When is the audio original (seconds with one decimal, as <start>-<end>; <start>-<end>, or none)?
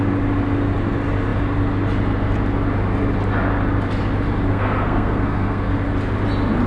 0.0-4.5; 5.7-6.7